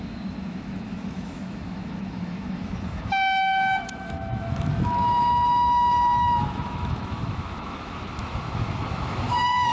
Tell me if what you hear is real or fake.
fake